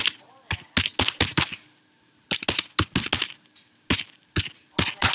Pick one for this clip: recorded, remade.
recorded